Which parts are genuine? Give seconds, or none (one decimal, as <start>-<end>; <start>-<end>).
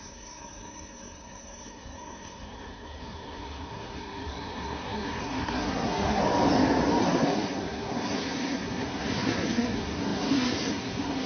6.2-7.0